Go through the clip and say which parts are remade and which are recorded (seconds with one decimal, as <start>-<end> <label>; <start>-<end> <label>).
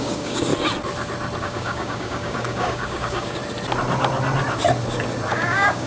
0.0-0.5 remade; 0.5-1.4 recorded; 1.4-3.4 remade; 3.4-5.3 recorded; 5.3-5.9 remade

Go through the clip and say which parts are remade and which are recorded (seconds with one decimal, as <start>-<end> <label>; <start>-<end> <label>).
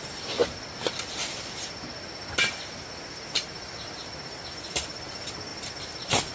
0.0-6.3 recorded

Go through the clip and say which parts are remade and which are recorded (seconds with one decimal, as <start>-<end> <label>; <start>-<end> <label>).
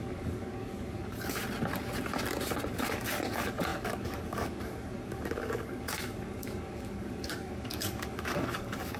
0.0-1.4 remade; 1.4-2.7 recorded; 2.7-9.0 remade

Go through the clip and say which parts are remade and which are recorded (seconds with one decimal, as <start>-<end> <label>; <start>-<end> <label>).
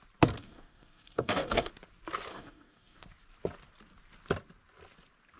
0.0-0.4 recorded; 0.4-1.7 remade; 1.7-2.3 recorded; 2.3-3.0 remade; 3.0-5.4 recorded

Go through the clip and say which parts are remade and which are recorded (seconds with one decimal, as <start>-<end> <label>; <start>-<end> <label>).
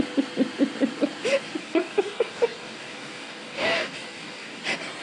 0.0-1.6 recorded; 1.6-4.6 remade; 4.6-5.0 recorded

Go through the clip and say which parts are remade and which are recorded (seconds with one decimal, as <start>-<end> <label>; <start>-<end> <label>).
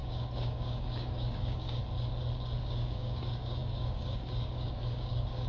0.0-1.8 remade; 1.8-2.6 recorded; 2.6-5.5 remade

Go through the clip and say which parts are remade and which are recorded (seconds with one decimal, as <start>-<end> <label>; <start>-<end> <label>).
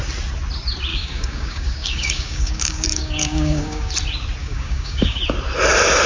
0.0-0.9 recorded; 0.9-3.9 remade; 3.9-4.4 recorded; 4.4-5.2 remade; 5.2-6.1 recorded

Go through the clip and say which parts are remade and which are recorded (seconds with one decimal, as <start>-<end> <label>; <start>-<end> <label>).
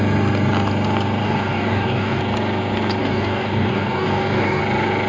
0.0-1.2 recorded; 1.2-2.2 remade; 2.2-3.0 recorded; 3.0-4.6 remade; 4.6-5.1 recorded